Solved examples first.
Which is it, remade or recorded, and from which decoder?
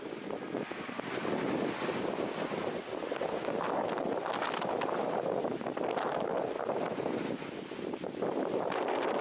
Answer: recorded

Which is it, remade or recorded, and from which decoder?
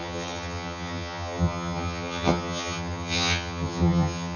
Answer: remade, vocoder, HiFi-GAN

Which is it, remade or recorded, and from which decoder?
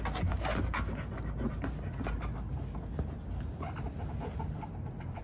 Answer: recorded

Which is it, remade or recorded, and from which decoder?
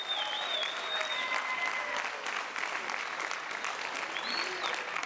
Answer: recorded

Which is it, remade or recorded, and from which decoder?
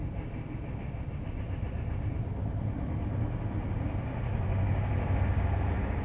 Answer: recorded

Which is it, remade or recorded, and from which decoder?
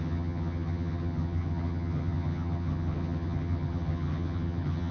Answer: remade, vocoder, HiFi-GAN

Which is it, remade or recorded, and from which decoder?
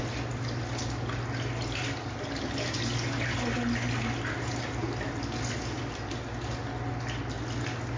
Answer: recorded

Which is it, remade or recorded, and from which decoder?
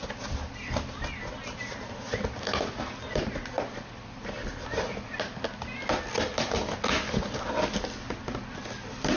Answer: recorded